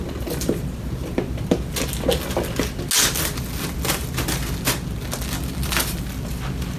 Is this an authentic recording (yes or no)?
yes